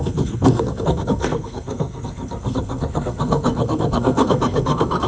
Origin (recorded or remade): remade